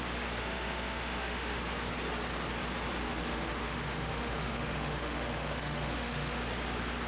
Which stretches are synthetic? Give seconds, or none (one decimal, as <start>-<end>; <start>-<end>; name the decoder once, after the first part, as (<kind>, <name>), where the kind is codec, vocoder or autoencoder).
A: 0.4-1.6 (autoencoder, DAC-VAE); 3.0-6.4